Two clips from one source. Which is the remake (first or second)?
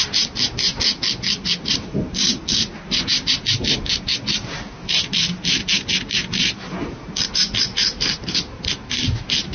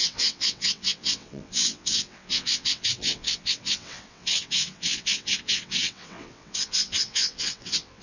second